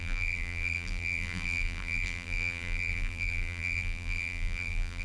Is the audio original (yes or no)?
no